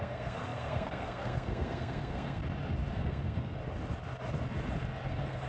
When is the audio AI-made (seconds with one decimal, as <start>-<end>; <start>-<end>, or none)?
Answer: 0.0-2.4; 2.9-3.6; 5.1-5.5